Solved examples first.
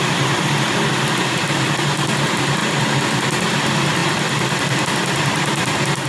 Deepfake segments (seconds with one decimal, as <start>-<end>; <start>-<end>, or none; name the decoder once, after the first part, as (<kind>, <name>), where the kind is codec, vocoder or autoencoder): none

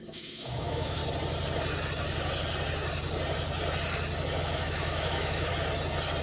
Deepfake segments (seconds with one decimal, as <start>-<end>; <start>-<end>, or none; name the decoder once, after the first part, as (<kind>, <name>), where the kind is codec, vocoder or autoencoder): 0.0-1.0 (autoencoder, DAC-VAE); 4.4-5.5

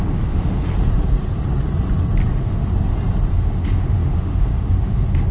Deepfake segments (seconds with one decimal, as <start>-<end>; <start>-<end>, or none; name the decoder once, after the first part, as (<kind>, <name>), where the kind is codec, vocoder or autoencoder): 0.0-0.7 (autoencoder, DAC-VAE); 2.3-2.7; 3.3-5.3

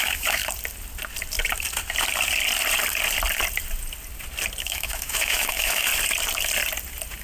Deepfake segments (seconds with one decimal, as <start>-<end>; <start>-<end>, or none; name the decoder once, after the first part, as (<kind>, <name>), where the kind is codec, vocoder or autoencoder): 0.0-0.4 (autoencoder, DAC-VAE); 4.6-5.9